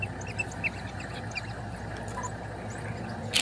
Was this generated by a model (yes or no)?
no